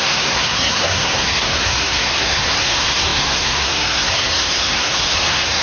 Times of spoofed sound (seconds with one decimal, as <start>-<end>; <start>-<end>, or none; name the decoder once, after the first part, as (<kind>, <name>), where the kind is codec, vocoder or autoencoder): 0.0-5.6 (codec, SNAC)